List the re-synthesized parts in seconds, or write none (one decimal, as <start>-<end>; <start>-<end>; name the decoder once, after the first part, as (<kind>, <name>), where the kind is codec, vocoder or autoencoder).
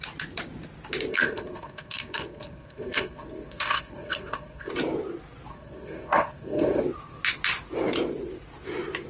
1.1-4.7 (codec, SNAC); 5.5-6.8